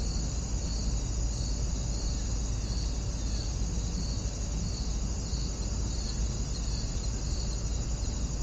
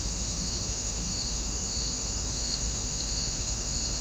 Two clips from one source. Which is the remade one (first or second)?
second